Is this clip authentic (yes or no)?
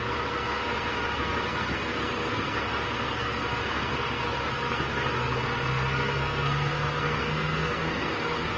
no